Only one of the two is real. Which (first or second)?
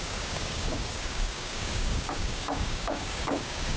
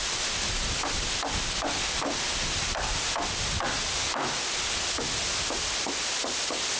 second